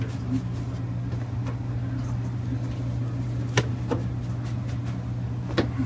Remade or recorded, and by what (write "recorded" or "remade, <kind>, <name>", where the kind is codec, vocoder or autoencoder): recorded